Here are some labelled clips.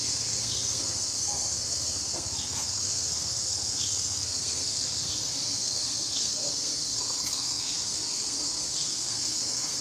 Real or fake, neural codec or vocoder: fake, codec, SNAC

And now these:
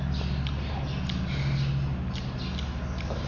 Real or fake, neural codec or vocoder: real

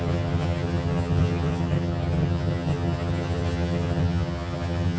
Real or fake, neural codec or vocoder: fake, vocoder, HiFi-GAN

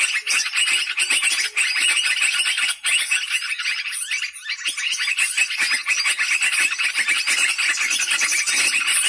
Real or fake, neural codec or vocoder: real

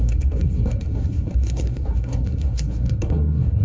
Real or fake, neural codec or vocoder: fake, codec, SNAC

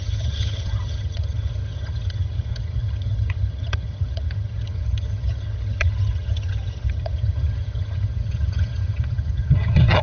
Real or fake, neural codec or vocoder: fake, vocoder, HiFi-GAN